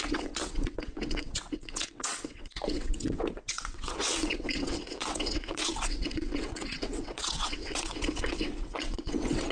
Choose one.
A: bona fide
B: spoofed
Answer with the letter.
B